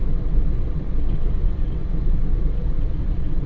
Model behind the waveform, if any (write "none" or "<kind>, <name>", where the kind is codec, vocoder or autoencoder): vocoder, WaveNeXt